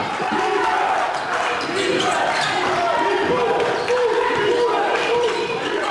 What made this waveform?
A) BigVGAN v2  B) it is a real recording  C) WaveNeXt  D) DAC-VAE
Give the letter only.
A